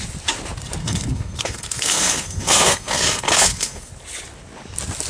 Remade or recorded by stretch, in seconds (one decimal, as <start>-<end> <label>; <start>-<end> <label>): 0.0-0.8 recorded; 0.8-3.9 remade; 3.9-5.1 recorded